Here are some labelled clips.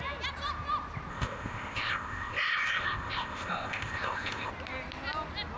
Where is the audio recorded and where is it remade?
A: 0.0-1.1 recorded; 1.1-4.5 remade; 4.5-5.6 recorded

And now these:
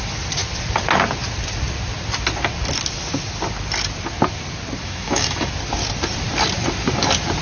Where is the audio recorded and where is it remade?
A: 0.0-4.8 recorded; 4.8-5.5 remade; 5.5-7.4 recorded

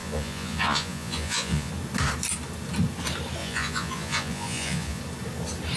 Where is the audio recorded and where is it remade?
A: 0.0-1.7 remade; 1.7-3.4 recorded; 3.4-5.0 remade; 5.0-5.8 recorded